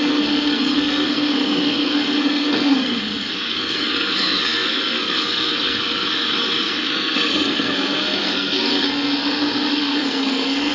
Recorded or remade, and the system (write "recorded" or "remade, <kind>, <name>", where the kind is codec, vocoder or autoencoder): remade, codec, SNAC